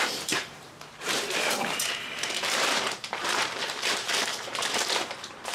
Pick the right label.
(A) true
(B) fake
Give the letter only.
B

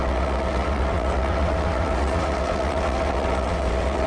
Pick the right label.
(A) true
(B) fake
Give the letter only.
B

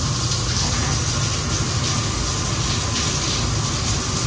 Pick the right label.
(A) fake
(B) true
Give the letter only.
B